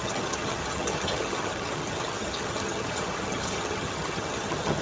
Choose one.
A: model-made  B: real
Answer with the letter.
A